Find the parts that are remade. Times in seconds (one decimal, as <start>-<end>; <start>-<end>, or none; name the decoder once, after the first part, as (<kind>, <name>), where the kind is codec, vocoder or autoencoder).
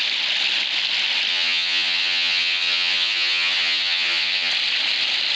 1.3-4.5 (vocoder, HiFi-GAN)